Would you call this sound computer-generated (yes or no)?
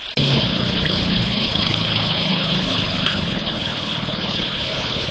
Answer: yes